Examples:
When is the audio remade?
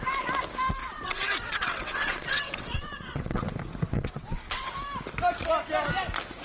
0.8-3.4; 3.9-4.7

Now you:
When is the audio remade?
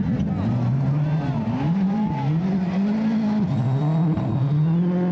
none